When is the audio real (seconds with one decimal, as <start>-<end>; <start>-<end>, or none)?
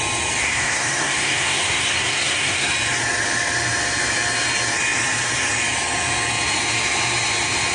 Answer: 0.0-0.4; 2.7-7.7